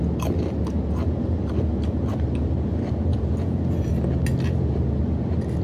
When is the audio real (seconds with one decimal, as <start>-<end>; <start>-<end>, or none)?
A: 0.0-3.1; 3.6-5.6